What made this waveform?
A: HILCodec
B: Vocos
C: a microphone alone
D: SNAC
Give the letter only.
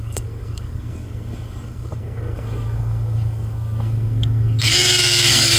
D